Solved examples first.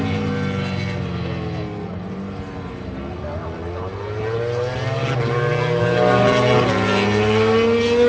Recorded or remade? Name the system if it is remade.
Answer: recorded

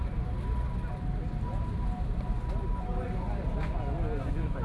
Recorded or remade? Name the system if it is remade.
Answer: recorded